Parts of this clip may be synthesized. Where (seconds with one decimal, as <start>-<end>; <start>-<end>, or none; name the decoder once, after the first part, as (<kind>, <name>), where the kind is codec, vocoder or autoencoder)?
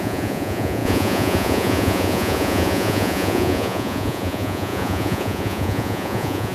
0.0-6.5 (vocoder, Vocos)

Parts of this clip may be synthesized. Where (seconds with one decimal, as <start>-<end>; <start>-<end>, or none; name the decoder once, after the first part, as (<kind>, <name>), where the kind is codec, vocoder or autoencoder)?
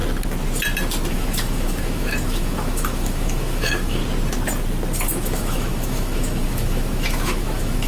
1.1-4.0 (autoencoder, DAC-VAE); 5.0-7.9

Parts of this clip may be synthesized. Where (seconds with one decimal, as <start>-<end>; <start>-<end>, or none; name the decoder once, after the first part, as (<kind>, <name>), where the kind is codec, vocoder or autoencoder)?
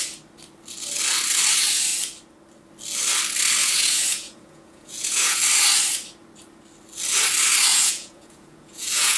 3.6-5.4 (vocoder, Vocos); 7.7-9.2